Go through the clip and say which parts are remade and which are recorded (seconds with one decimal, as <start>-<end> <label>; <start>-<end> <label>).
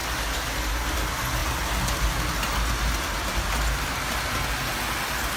0.0-5.4 recorded